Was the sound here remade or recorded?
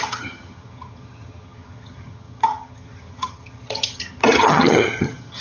remade